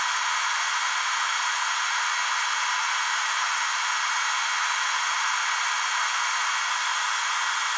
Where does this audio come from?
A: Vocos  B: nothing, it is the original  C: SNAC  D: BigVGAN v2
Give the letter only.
B